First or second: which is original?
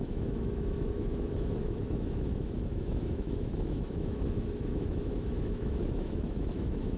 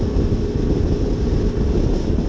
second